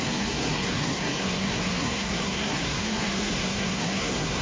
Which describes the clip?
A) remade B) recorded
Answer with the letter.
A